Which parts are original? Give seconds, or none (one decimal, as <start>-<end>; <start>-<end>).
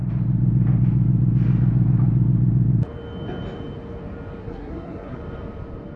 0.0-4.4; 5.2-6.0